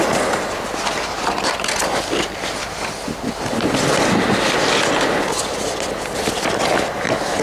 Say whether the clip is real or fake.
real